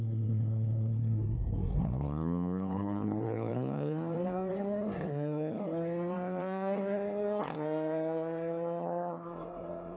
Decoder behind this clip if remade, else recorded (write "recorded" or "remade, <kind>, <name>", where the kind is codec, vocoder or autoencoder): remade, codec, SNAC